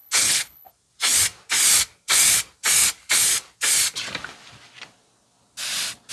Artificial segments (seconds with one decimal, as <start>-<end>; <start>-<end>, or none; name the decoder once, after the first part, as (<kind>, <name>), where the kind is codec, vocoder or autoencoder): 0.0-0.7 (codec, HILCodec)